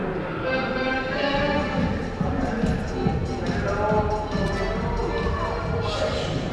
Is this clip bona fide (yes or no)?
yes